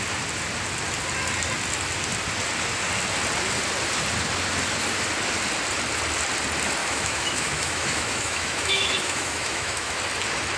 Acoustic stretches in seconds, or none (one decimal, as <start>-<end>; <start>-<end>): 0.0-6.8; 10.0-10.6